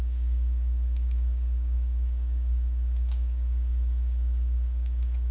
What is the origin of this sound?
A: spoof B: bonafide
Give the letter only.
A